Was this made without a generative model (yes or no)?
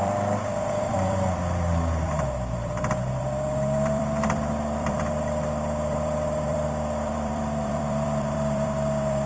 no